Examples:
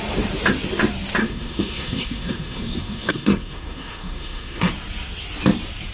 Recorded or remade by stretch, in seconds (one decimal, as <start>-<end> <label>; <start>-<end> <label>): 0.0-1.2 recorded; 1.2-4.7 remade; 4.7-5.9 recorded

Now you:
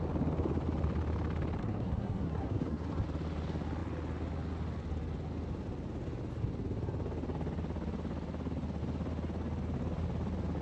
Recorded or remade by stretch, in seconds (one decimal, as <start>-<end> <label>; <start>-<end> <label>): 0.0-1.6 recorded; 1.6-2.9 remade; 2.9-10.6 recorded

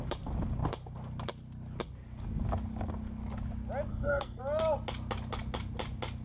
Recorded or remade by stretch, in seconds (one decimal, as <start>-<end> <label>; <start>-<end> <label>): 0.0-3.9 recorded; 3.9-4.4 remade; 4.4-6.2 recorded

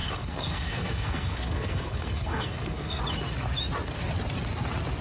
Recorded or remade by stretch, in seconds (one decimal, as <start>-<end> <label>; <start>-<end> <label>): 0.0-3.0 remade; 3.0-5.0 recorded

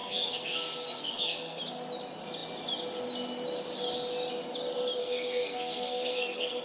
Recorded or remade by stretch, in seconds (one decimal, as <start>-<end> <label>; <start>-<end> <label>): 0.0-1.6 remade; 1.6-5.0 recorded; 5.0-6.6 remade

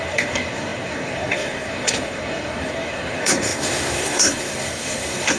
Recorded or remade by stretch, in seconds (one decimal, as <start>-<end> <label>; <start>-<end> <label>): 0.0-5.4 remade

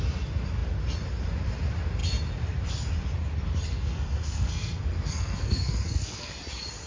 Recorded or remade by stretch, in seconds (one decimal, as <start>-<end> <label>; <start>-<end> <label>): 0.0-3.7 recorded; 3.7-6.3 remade; 6.3-6.9 recorded